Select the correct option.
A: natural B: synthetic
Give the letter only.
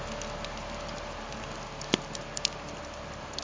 A